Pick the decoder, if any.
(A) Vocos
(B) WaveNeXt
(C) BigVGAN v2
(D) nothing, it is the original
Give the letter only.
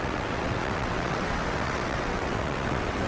B